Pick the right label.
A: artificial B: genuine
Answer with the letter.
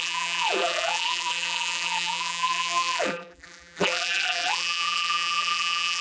A